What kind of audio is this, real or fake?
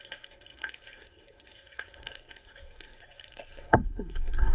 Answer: fake